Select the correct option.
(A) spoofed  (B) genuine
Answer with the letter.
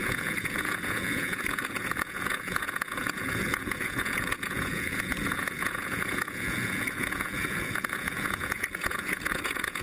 A